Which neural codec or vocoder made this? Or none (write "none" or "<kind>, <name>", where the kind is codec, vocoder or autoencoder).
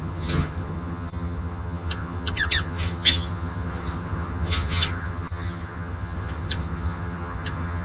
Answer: vocoder, HiFi-GAN